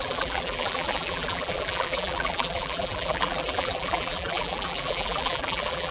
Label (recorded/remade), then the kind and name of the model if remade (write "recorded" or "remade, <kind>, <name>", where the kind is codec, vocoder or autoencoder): remade, vocoder, BigVGAN v2